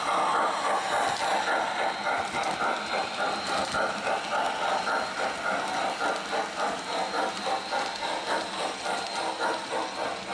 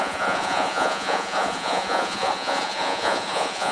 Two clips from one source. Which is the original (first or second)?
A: first